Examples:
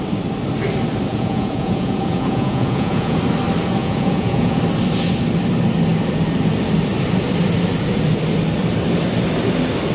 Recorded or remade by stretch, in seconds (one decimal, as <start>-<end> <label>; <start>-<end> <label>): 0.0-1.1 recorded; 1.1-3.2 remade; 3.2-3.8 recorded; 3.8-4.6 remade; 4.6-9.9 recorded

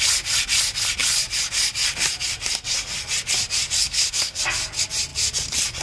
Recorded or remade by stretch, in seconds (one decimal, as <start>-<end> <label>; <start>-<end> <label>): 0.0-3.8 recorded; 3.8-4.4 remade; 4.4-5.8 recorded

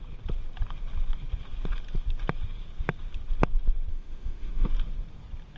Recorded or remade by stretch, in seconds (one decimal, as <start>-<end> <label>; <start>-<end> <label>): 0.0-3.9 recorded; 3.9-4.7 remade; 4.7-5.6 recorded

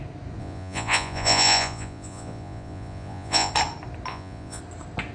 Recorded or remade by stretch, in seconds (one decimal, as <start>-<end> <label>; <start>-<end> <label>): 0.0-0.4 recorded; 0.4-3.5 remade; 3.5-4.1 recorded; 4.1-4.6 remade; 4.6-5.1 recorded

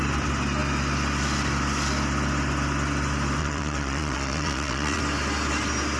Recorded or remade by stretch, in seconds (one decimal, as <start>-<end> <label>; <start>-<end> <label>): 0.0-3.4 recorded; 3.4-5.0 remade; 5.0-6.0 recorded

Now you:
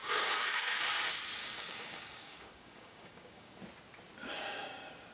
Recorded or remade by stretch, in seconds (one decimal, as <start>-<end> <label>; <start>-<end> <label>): 0.0-0.8 remade; 0.8-1.4 recorded; 1.4-3.6 remade; 3.6-4.2 recorded; 4.2-5.1 remade

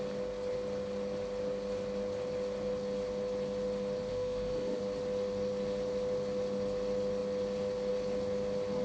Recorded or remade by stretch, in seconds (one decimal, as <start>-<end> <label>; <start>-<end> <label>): 0.0-4.1 recorded; 4.1-4.8 remade; 4.8-8.8 recorded